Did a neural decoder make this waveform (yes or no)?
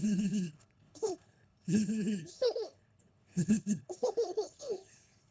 yes